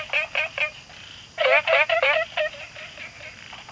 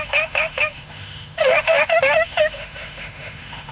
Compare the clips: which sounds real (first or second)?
first